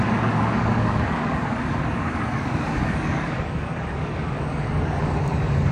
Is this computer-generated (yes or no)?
yes